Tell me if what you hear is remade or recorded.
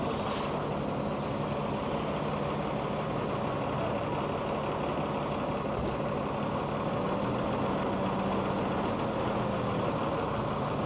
recorded